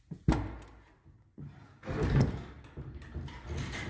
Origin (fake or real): real